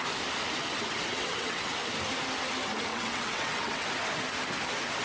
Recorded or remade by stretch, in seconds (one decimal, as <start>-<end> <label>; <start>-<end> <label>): 0.0-1.1 recorded; 1.1-1.7 remade; 1.7-2.9 recorded; 2.9-3.9 remade; 3.9-5.0 recorded